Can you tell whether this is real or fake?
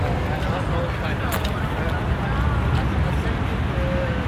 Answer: real